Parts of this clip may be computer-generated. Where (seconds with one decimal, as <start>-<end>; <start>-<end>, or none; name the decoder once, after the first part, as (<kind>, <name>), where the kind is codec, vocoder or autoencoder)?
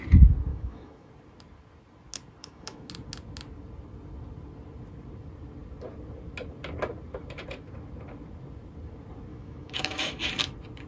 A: 0.5-1.1 (autoencoder, DAC-VAE); 2.4-2.9; 9.3-10.3